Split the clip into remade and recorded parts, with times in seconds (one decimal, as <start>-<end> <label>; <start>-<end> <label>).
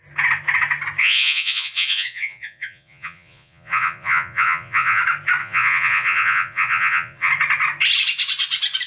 0.0-1.0 recorded; 1.0-5.0 remade; 5.0-5.4 recorded; 5.4-7.3 remade; 7.3-8.9 recorded